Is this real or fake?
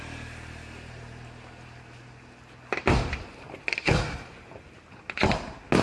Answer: real